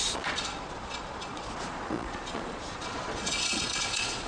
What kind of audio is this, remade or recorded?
remade